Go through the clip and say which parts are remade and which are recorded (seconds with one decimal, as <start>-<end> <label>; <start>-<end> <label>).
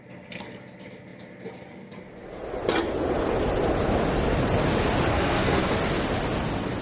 0.0-5.1 recorded; 5.1-5.7 remade; 5.7-6.8 recorded